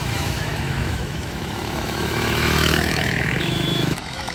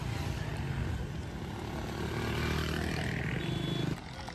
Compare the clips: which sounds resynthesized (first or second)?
first